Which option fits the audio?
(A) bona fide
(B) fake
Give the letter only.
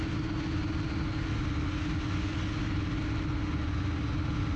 A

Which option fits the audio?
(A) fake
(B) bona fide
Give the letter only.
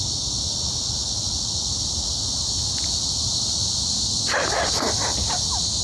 B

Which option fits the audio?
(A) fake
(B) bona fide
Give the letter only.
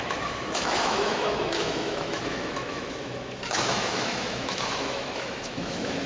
A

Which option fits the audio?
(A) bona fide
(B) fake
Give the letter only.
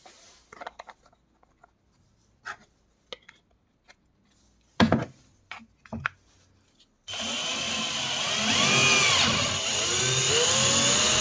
A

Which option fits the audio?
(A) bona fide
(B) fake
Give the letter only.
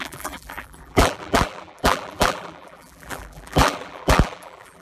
B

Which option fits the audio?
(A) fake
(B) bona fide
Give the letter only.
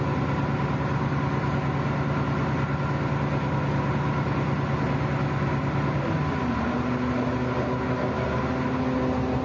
B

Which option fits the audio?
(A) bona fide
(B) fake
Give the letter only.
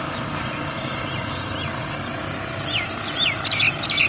A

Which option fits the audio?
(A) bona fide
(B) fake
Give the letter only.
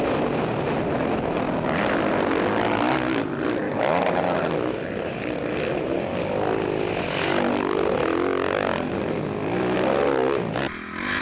A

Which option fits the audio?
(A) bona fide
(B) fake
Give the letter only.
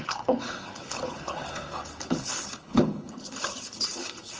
B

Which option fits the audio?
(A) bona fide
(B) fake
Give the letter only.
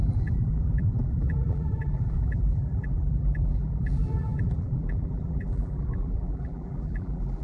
B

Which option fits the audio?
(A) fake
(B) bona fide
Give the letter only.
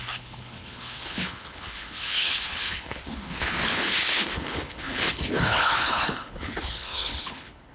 A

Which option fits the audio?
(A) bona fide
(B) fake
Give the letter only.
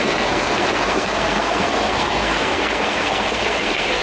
B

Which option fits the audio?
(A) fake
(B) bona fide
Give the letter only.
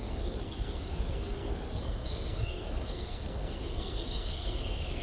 A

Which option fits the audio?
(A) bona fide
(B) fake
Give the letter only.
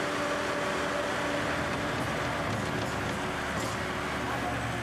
A